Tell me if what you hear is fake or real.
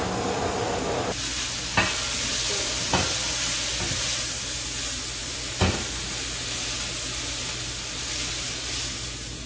real